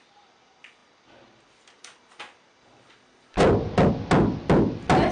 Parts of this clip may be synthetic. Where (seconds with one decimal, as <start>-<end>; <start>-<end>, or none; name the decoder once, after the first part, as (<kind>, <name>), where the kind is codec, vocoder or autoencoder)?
none